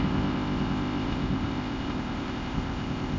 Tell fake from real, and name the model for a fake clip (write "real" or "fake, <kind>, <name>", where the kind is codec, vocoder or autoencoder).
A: fake, codec, ZipCodec